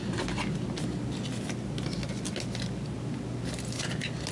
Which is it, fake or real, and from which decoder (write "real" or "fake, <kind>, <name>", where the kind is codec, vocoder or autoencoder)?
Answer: real